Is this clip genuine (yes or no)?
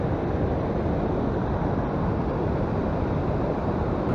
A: yes